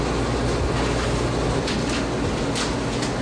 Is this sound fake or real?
real